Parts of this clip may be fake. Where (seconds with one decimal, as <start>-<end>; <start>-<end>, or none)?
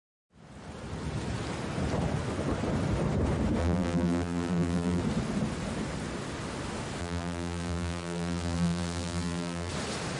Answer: 3.6-5.0; 7.0-9.7